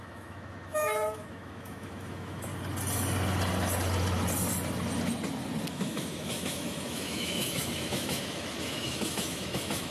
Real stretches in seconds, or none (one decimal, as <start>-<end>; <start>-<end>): 2.5-5.7